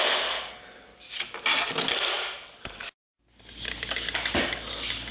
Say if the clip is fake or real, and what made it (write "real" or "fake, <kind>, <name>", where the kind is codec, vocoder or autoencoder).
real